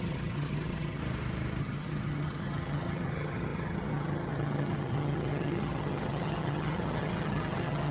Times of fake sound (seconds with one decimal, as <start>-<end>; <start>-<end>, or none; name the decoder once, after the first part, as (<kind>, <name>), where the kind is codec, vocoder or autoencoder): 0.0-1.0 (vocoder, HiFi-GAN); 1.6-7.9